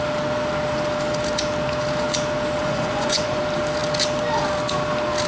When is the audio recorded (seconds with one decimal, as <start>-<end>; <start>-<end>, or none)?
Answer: 0.0-2.6; 3.4-5.3